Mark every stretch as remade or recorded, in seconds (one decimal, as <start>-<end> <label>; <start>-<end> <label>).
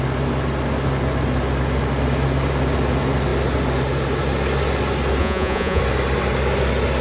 0.0-5.2 recorded; 5.2-5.8 remade; 5.8-7.0 recorded